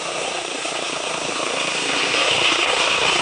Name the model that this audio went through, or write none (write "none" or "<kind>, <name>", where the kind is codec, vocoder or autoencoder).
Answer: codec, SNAC